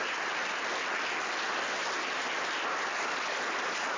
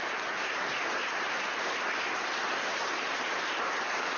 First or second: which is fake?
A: second